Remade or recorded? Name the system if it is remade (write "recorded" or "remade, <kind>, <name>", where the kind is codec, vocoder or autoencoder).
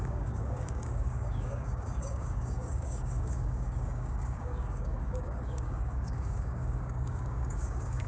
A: remade, codec, DAC